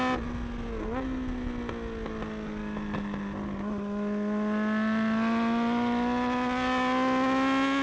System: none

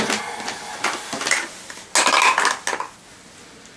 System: none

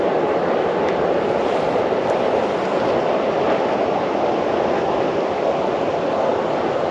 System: none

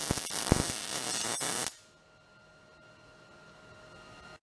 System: none